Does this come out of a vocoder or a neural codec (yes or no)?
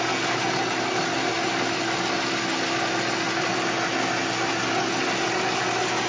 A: no